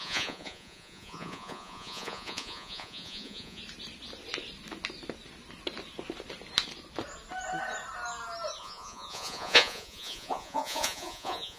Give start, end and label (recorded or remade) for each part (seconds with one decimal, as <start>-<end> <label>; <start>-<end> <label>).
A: 0.0-3.6 remade; 3.6-8.6 recorded; 8.6-11.6 remade

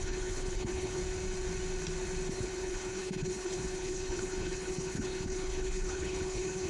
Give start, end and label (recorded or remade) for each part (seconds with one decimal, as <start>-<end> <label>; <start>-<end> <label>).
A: 0.0-1.0 remade; 1.0-2.3 recorded; 2.3-6.7 remade

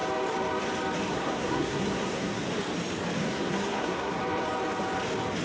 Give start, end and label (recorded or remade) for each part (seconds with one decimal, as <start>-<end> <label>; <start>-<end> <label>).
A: 0.0-1.1 recorded; 1.1-2.4 remade; 2.4-3.2 recorded; 3.2-4.2 remade; 4.2-5.4 recorded

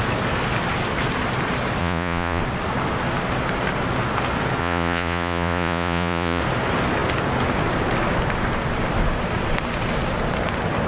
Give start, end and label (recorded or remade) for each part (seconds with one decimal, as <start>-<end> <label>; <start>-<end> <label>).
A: 0.0-1.8 recorded; 1.8-2.4 remade; 2.4-4.6 recorded; 4.6-6.4 remade; 6.4-10.9 recorded

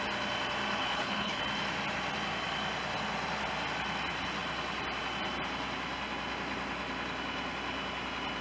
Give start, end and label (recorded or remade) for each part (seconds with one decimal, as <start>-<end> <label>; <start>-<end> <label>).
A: 0.0-0.8 recorded; 0.8-1.4 remade; 1.4-8.4 recorded

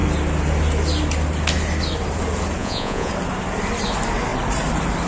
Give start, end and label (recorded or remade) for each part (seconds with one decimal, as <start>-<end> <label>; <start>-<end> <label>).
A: 0.0-2.6 recorded; 2.6-3.1 remade; 3.1-5.1 recorded

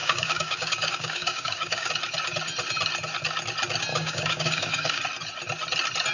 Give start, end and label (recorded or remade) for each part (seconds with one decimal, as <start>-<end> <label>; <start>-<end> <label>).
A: 0.0-1.9 remade; 1.9-3.9 recorded; 3.9-5.0 remade; 5.0-6.1 recorded